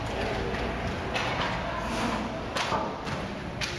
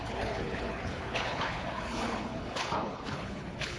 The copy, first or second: second